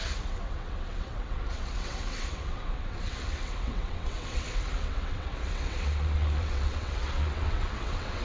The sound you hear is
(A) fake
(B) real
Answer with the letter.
A